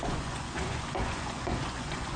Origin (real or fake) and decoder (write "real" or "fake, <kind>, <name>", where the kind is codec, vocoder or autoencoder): fake, vocoder, Vocos